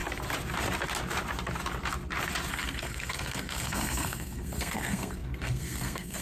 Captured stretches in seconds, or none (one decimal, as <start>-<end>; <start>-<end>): 0.0-2.5